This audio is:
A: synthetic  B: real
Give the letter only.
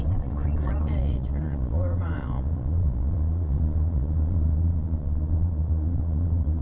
A